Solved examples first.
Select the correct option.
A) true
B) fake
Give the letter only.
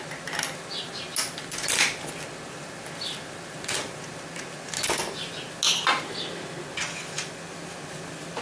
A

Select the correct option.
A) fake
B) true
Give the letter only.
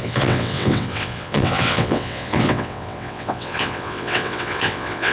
A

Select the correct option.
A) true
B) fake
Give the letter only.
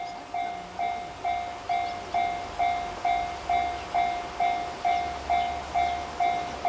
A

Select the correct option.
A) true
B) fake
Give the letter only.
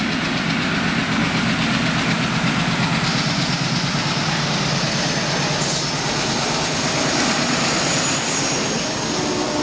A